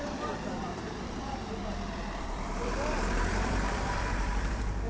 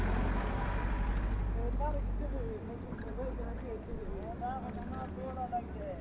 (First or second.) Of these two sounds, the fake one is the first